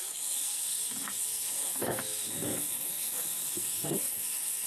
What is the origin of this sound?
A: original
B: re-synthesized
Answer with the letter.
B